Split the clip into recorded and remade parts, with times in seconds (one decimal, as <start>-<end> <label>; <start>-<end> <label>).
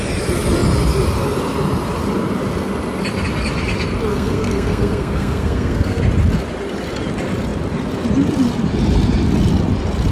0.0-4.1 recorded; 4.1-6.0 remade; 6.0-10.1 recorded